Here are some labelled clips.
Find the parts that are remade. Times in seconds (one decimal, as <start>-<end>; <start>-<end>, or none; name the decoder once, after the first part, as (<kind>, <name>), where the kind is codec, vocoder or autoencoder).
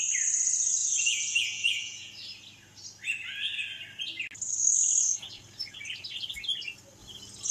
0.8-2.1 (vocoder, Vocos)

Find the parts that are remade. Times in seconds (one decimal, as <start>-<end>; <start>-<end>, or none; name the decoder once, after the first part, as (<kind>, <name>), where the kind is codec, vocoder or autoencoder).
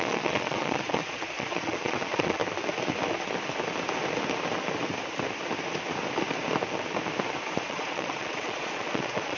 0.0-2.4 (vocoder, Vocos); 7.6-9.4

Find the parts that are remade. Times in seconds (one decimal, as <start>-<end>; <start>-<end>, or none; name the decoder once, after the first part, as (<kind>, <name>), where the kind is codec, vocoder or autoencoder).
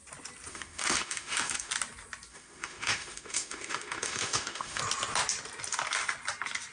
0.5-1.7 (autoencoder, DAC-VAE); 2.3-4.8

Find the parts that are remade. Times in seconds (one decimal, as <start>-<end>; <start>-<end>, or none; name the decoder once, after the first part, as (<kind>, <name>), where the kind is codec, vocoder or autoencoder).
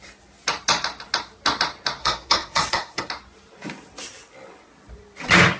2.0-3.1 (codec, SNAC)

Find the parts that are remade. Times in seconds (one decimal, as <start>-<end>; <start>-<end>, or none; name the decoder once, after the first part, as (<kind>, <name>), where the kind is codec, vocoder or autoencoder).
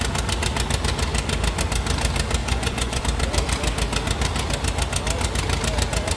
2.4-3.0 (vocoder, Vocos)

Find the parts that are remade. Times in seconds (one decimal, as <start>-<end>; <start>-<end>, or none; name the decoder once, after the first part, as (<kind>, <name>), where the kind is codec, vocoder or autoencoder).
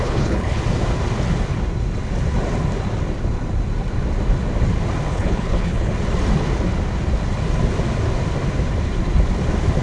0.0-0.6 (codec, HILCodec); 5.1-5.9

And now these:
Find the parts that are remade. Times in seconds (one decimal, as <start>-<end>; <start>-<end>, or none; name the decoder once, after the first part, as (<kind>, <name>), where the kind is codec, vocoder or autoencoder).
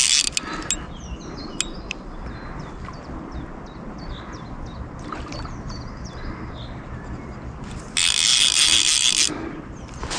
8.3-10.2 (vocoder, BigVGAN v2)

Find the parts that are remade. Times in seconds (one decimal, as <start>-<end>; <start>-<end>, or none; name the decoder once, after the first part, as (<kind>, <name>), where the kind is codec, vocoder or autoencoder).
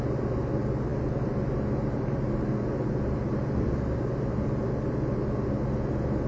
none